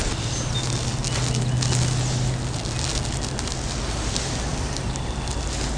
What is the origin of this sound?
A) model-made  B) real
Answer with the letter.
B